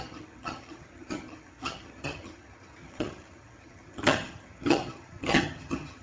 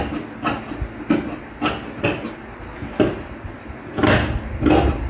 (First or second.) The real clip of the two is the second